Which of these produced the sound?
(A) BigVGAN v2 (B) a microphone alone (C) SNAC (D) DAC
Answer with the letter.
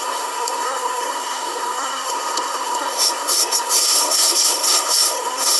C